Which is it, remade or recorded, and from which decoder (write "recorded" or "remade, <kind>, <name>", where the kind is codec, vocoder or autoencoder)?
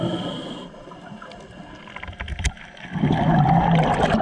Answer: recorded